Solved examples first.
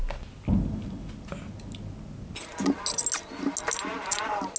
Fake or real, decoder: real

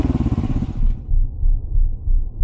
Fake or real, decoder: real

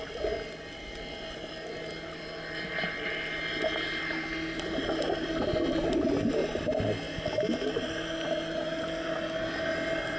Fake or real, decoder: real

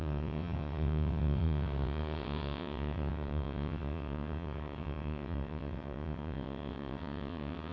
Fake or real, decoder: fake, vocoder, WaveNeXt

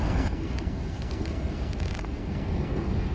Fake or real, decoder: fake, codec, SNAC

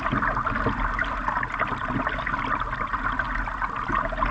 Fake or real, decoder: real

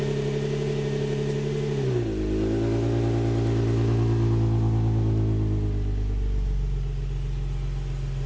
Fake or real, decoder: real